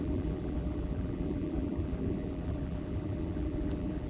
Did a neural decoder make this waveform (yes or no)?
yes